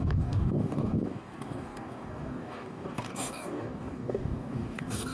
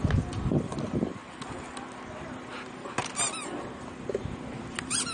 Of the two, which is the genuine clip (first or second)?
second